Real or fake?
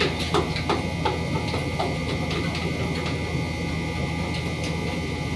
real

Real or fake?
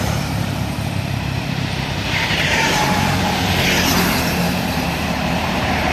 fake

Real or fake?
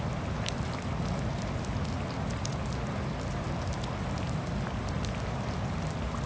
real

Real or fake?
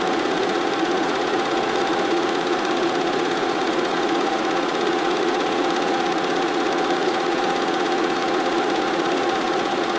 fake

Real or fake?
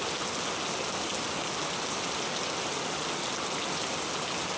real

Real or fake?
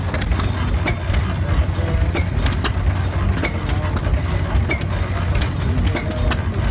real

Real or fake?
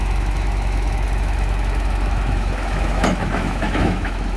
fake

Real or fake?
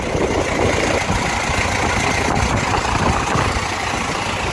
real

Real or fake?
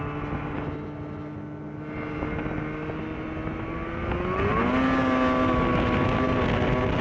real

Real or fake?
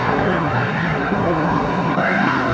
fake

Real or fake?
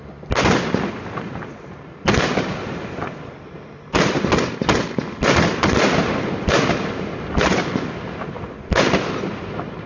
real